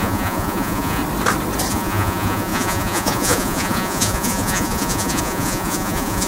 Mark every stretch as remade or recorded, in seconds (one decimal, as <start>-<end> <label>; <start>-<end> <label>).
0.0-1.0 remade; 1.0-1.7 recorded; 1.7-6.3 remade